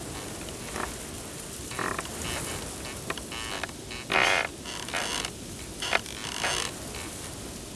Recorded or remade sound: recorded